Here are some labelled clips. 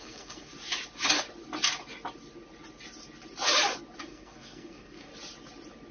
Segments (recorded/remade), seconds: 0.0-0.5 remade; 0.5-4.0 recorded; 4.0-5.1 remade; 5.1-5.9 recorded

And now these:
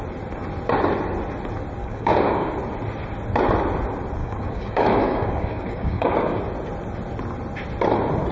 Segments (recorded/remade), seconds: 0.0-1.8 recorded; 1.8-2.5 remade; 2.5-4.2 recorded; 4.2-6.4 remade; 6.4-8.3 recorded